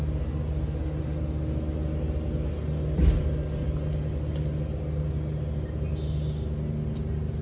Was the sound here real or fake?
real